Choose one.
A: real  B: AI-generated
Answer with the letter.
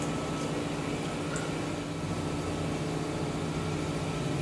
A